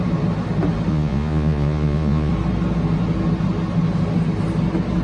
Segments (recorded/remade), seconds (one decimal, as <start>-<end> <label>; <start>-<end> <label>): 0.0-0.9 recorded; 0.9-2.3 remade; 2.3-5.0 recorded